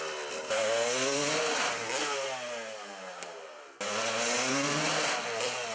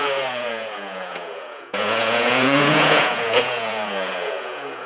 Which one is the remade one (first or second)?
second